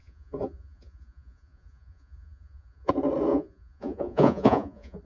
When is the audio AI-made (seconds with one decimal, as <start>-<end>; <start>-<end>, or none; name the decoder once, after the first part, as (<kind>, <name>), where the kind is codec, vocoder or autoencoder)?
0.0-2.9 (vocoder, Vocos); 3.3-5.0